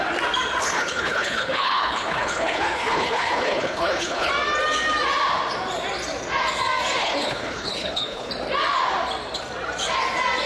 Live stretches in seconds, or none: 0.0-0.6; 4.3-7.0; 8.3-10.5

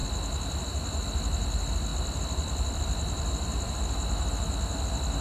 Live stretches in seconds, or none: 0.0-1.9; 3.7-5.2

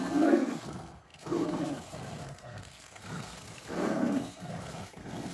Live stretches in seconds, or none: none

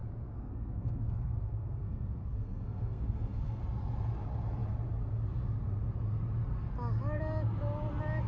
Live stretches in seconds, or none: 3.6-8.3

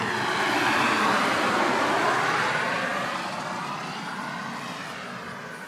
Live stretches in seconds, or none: 0.0-5.7

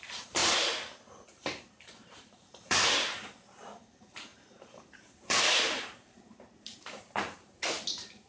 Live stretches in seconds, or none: 0.4-1.3

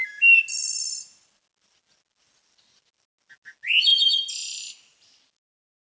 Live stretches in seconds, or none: 0.0-5.9

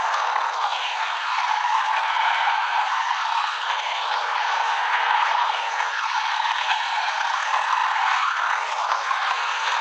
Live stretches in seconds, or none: none